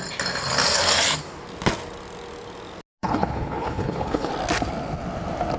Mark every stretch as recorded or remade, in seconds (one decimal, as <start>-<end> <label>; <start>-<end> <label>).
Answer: 0.0-3.0 recorded; 3.0-4.3 remade; 4.3-5.6 recorded